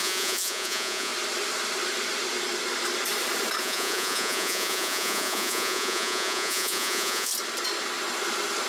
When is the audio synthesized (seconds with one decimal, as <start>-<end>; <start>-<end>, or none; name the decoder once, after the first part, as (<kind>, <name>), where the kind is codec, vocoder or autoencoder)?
0.0-1.1 (vocoder, Vocos); 3.6-7.3